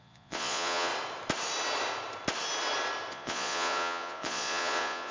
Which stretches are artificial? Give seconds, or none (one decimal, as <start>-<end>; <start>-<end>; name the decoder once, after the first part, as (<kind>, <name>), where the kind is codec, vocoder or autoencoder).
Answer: 0.0-0.9 (vocoder, Vocos); 3.1-5.1

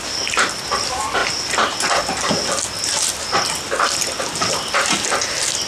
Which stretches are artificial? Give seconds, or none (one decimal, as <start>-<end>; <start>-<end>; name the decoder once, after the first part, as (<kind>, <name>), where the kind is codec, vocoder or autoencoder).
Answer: none

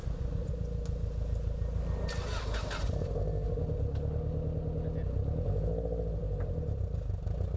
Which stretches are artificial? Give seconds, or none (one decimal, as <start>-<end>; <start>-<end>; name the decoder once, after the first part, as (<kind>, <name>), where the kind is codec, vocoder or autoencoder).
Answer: 0.0-0.5 (vocoder, Vocos)

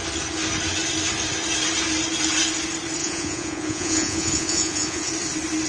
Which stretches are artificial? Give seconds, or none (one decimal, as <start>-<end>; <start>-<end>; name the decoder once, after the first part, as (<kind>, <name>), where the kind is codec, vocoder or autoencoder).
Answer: 3.0-5.1 (vocoder, Vocos)

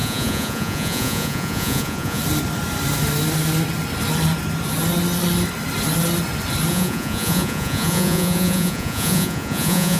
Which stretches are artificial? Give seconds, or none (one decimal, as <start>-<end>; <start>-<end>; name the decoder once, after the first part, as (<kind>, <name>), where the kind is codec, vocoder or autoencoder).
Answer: 0.0-2.2 (vocoder, Vocos); 6.7-10.0

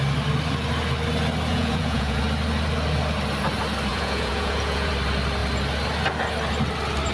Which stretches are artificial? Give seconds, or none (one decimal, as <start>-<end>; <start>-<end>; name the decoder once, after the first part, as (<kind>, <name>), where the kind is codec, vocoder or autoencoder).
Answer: 1.5-2.2 (vocoder, Vocos); 3.9-4.9